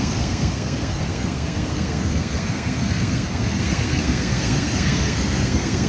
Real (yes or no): no